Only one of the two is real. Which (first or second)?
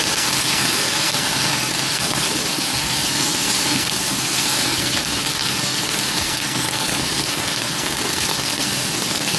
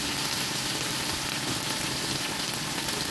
second